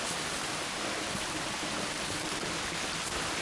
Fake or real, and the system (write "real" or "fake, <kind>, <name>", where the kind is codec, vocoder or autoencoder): real